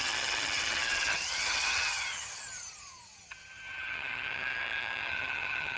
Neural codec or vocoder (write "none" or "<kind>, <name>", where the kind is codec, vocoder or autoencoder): vocoder, HiFi-GAN